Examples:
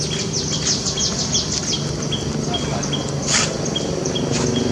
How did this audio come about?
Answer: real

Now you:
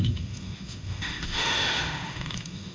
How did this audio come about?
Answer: fake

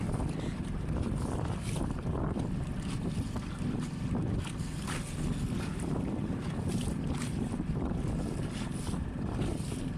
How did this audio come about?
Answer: real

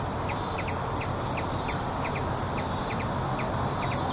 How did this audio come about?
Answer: real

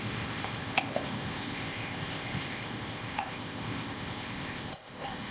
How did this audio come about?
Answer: fake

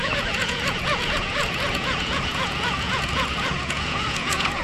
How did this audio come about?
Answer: fake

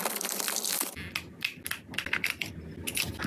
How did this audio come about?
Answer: real